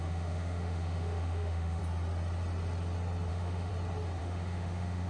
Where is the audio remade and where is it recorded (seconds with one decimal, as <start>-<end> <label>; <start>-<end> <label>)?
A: 0.0-1.8 remade; 1.8-3.3 recorded; 3.3-3.7 remade; 3.7-4.2 recorded; 4.2-5.1 remade